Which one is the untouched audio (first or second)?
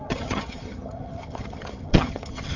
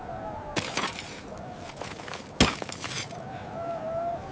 second